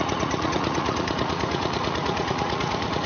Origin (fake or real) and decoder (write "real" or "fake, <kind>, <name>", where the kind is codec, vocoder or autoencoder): fake, vocoder, Vocos